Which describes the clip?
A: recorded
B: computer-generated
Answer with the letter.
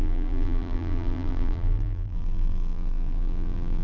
B